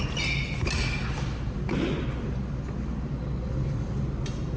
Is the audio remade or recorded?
recorded